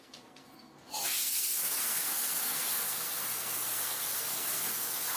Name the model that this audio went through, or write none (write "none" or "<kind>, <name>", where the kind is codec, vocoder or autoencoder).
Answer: codec, SNAC